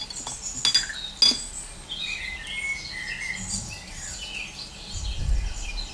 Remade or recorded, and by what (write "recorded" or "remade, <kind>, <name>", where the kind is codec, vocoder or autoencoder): recorded